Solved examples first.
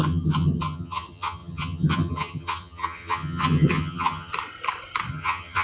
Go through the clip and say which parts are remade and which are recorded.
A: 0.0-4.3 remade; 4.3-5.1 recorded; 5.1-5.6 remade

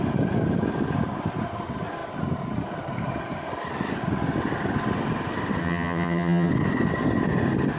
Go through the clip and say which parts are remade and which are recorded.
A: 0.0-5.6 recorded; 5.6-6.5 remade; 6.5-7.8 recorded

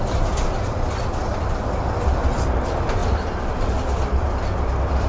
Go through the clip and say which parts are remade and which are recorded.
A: 0.0-5.1 recorded

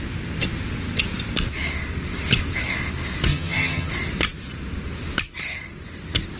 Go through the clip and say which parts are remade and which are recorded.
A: 0.0-3.3 recorded; 3.3-3.9 remade; 3.9-6.4 recorded

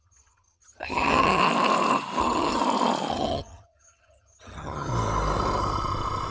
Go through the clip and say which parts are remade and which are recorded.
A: 0.0-1.4 remade; 1.4-2.2 recorded; 2.2-2.6 remade; 2.6-3.1 recorded; 3.1-4.9 remade; 4.9-6.3 recorded

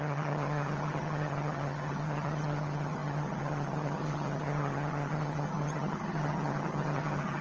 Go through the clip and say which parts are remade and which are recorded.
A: 0.0-7.4 remade

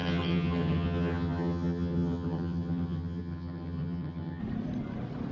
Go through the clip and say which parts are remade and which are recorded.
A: 0.0-4.4 remade; 4.4-5.3 recorded

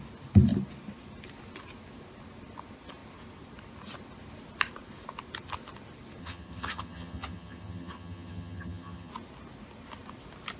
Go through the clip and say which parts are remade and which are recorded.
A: 0.0-6.2 recorded; 6.2-9.1 remade; 9.1-10.6 recorded